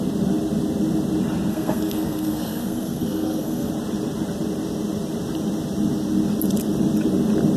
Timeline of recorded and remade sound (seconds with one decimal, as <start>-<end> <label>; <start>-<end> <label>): 0.0-1.5 recorded; 1.5-3.7 remade; 3.7-7.6 recorded